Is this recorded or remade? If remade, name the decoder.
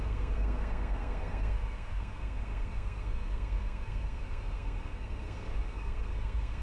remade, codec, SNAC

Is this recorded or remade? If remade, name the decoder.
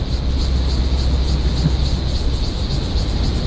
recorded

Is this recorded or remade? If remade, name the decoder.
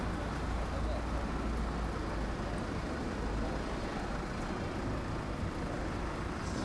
recorded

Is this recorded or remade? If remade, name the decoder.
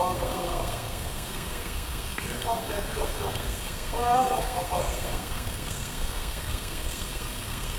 remade, codec, SNAC